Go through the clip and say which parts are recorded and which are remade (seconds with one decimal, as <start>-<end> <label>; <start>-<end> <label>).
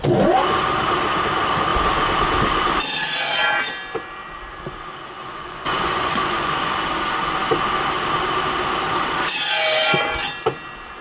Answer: 0.0-5.2 recorded; 5.2-6.7 remade; 6.7-11.0 recorded